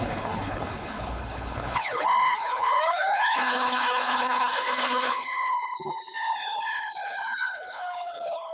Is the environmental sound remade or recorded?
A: remade